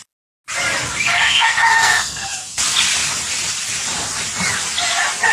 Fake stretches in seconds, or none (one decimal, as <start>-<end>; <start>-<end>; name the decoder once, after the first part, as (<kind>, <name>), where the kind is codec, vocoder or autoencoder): 1.1-2.6 (codec, SNAC)